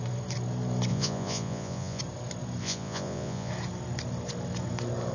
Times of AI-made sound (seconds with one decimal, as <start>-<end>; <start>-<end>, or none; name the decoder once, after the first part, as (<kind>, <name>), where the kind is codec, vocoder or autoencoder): 0.9-2.0 (vocoder, Vocos); 2.6-3.5